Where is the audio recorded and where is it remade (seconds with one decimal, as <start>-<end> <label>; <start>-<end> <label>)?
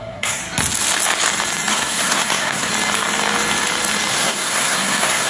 0.0-0.4 remade; 0.4-1.7 recorded; 1.7-2.7 remade; 2.7-4.1 recorded; 4.1-5.3 remade